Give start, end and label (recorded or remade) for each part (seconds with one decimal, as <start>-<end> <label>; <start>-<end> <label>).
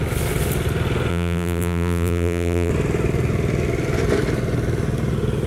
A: 0.0-1.1 recorded; 1.1-2.7 remade; 2.7-5.5 recorded